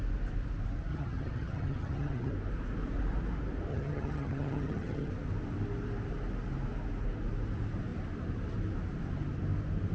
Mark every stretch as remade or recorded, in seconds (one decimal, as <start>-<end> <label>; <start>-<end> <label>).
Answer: 0.0-0.9 recorded; 0.9-2.3 remade; 2.3-3.7 recorded; 3.7-5.1 remade; 5.1-9.9 recorded